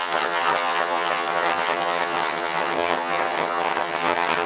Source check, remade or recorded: remade